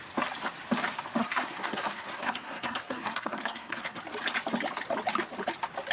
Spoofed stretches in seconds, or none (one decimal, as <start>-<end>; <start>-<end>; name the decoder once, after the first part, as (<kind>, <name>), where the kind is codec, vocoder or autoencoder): 1.2-4.0 (codec, SNAC)